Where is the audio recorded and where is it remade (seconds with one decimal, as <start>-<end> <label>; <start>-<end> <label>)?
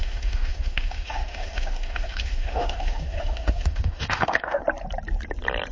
0.0-4.6 remade; 4.6-5.7 recorded